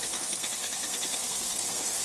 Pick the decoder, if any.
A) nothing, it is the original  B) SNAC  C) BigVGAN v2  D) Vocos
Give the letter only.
B